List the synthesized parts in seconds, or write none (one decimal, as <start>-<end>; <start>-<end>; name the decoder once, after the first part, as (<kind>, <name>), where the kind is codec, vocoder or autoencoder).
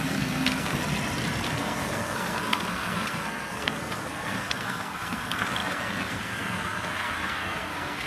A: 0.0-0.8 (codec, SNAC); 1.5-8.1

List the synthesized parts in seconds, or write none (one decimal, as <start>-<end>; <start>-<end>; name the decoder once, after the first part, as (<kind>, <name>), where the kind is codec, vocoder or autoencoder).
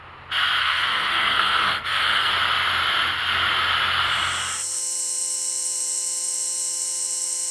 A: 0.6-2.3 (codec, SNAC)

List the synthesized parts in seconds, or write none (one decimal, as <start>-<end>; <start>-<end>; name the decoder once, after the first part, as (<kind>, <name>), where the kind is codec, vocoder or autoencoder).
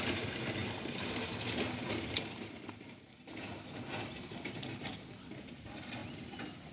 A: none